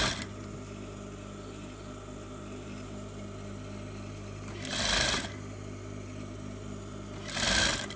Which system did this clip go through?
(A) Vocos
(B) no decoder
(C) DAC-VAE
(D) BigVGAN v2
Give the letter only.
B